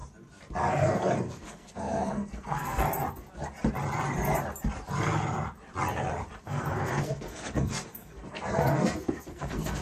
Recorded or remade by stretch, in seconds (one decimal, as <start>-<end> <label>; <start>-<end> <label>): 0.0-0.7 recorded; 0.7-2.8 remade; 2.8-6.4 recorded; 6.4-9.8 remade